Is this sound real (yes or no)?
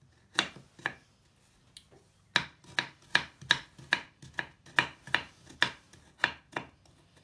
yes